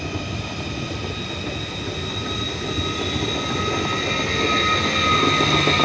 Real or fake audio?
real